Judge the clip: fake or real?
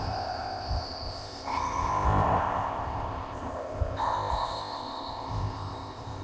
fake